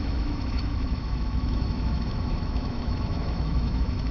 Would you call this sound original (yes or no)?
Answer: no